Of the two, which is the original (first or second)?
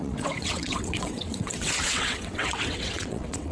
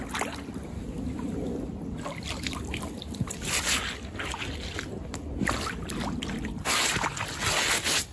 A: second